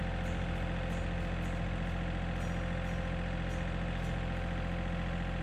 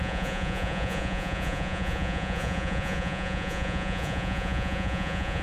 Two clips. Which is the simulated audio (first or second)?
second